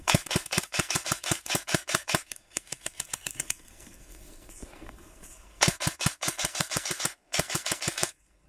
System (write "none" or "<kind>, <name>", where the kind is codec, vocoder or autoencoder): codec, SNAC